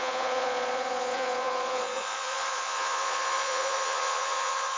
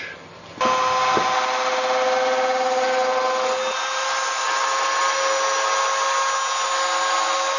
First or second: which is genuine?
second